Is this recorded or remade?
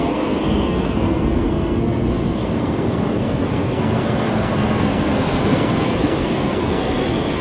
remade